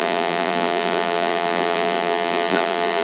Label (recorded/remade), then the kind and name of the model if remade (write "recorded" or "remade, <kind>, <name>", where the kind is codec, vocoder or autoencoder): remade, vocoder, BigVGAN v2